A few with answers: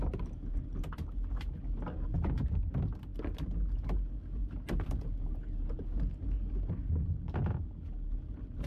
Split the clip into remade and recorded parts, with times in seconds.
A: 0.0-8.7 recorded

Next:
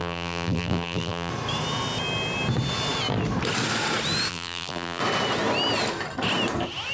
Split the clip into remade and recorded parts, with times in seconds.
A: 0.0-1.3 remade; 1.3-4.3 recorded; 4.3-5.0 remade; 5.0-6.9 recorded

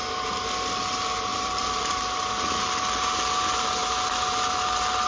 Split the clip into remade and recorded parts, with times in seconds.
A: 0.0-1.3 recorded; 1.3-1.9 remade; 1.9-5.1 recorded

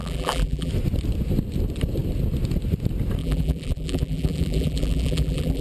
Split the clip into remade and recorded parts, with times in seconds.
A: 0.0-0.7 remade; 0.7-3.2 recorded; 3.2-5.6 remade

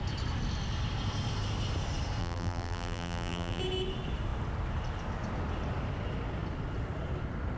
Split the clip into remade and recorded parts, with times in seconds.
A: 0.0-2.2 recorded; 2.2-3.6 remade; 3.6-7.6 recorded

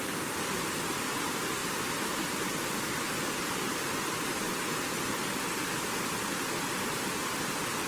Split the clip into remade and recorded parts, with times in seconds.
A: 0.0-7.9 recorded

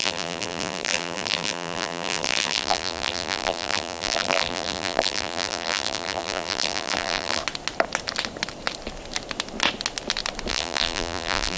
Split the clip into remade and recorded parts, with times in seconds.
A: 0.0-7.4 remade; 7.4-10.5 recorded; 10.5-11.6 remade

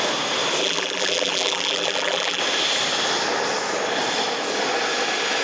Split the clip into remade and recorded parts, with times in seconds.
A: 0.0-0.6 recorded; 0.6-2.4 remade; 2.4-5.4 recorded